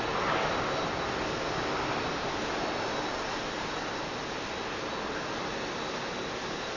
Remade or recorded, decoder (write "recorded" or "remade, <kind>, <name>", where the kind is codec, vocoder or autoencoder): recorded